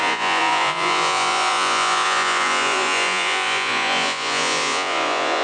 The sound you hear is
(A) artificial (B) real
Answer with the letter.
A